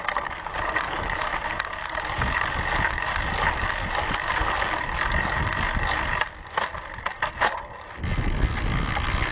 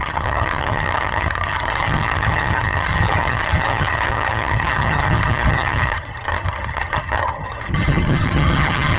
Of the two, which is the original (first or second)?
first